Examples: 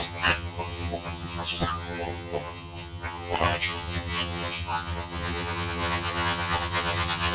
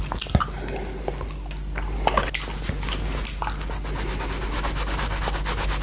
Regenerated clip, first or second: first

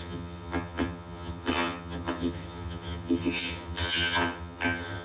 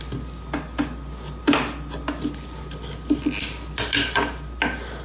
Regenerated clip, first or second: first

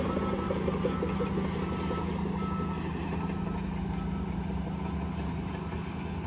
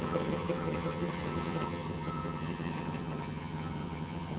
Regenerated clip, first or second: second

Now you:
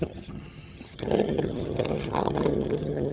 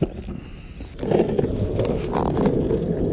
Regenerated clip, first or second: first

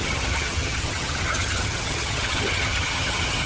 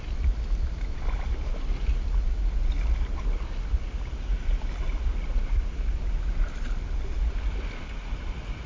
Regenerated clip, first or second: first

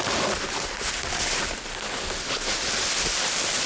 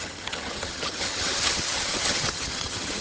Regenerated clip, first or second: second